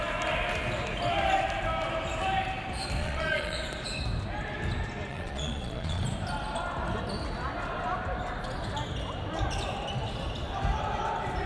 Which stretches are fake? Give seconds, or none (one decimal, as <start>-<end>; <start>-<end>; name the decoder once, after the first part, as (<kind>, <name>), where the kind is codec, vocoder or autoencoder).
3.0-3.6 (vocoder, Vocos); 5.1-6.0